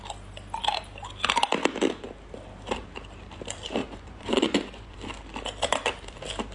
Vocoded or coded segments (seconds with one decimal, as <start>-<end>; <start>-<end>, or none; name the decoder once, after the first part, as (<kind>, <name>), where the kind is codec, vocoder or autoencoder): 3.8-5.0 (vocoder, Vocos)